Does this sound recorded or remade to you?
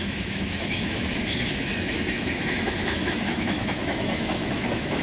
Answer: remade